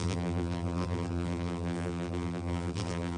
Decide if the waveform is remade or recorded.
remade